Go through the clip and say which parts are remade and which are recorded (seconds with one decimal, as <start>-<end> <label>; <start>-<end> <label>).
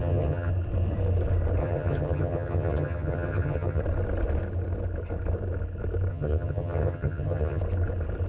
0.0-0.5 remade; 0.5-1.6 recorded; 1.6-3.8 remade; 3.8-6.1 recorded; 6.1-7.6 remade; 7.6-8.3 recorded